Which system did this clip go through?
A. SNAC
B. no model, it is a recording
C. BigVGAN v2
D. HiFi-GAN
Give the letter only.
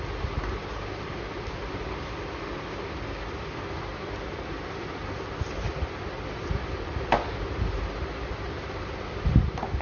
B